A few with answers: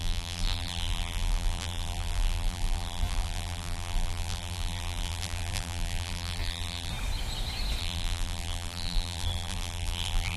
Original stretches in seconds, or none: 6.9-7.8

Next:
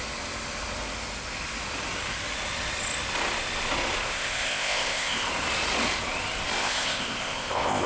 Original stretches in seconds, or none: 0.0-4.0; 5.3-6.6